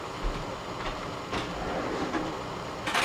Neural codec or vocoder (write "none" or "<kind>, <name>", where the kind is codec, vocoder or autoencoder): none